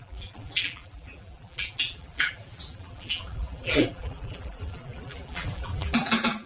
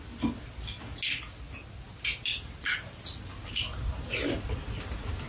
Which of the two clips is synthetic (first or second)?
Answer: first